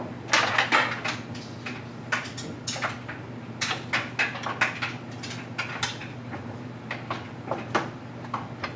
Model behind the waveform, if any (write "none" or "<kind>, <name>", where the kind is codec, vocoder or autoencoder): none